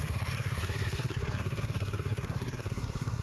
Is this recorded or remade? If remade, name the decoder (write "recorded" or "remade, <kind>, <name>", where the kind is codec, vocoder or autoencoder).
remade, codec, SNAC